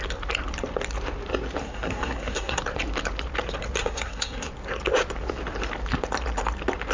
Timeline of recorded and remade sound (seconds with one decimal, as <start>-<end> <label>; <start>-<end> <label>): 0.0-1.6 recorded; 1.6-2.6 remade; 2.6-3.8 recorded; 3.8-4.5 remade; 4.5-6.9 recorded